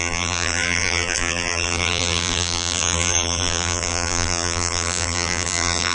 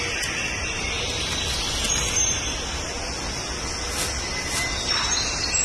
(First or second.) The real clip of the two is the second